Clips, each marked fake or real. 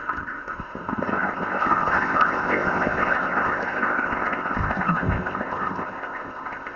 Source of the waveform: fake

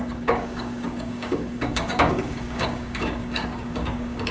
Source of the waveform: fake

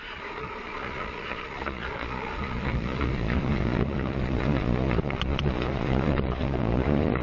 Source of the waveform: fake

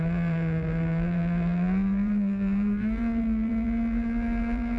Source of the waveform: fake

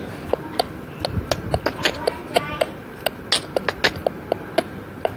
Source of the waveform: real